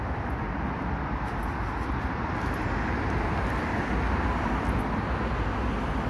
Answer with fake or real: real